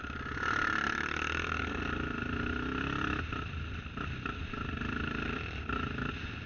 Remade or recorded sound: recorded